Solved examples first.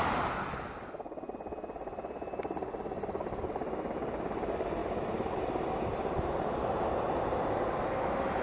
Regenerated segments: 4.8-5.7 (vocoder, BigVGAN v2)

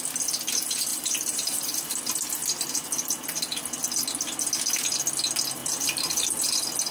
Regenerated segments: 0.9-1.8 (vocoder, BigVGAN v2); 5.6-6.3